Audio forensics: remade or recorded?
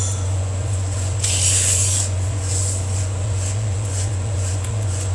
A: remade